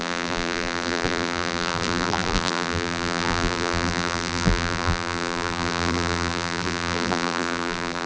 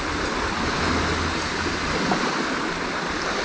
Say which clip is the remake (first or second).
first